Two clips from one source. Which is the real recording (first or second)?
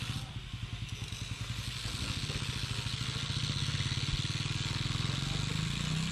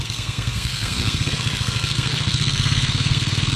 first